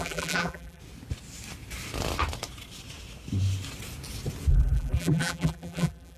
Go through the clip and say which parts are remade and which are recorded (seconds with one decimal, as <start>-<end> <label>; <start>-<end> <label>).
0.0-0.8 remade; 0.8-4.5 recorded; 4.5-6.2 remade